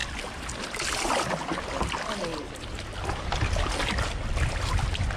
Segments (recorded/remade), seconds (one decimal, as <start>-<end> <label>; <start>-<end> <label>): 0.0-5.2 recorded